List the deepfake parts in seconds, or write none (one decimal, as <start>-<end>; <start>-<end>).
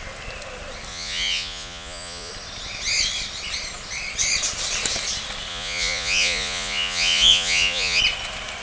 0.9-2.3; 5.5-8.0